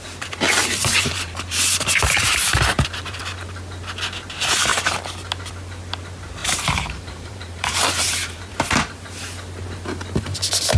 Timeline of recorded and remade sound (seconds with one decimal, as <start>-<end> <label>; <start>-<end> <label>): 0.0-0.6 recorded; 0.6-3.2 remade; 3.2-6.4 recorded; 6.4-8.5 remade; 8.5-10.8 recorded

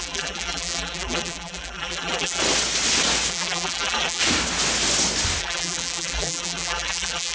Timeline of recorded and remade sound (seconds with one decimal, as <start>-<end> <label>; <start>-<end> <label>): 0.0-2.4 remade; 2.4-3.3 recorded; 3.3-4.2 remade; 4.2-5.4 recorded; 5.4-7.3 remade